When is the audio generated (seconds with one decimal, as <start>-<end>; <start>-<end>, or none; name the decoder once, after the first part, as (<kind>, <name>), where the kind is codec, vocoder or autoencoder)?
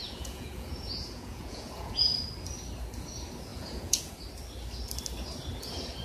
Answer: 0.0-2.3 (vocoder, Vocos); 3.5-4.1